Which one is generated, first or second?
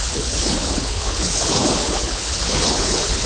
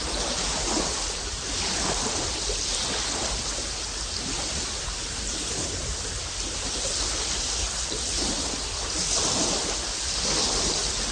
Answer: first